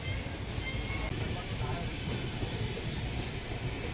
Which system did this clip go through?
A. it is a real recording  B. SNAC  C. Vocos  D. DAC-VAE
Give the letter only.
A